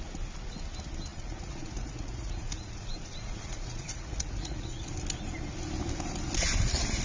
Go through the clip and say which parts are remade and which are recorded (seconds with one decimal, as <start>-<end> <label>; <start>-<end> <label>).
0.0-1.1 recorded; 1.1-4.9 remade; 4.9-7.0 recorded

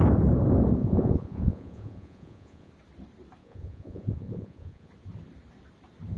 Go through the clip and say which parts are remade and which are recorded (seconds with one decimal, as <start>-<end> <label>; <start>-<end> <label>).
0.0-0.8 recorded; 0.8-2.7 remade; 2.7-3.4 recorded; 3.4-4.9 remade; 4.9-6.2 recorded

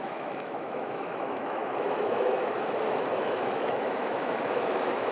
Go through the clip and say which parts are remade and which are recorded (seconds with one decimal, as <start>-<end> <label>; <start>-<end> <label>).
0.0-5.1 remade